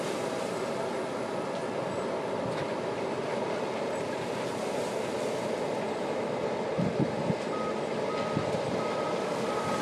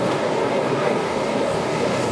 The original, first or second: first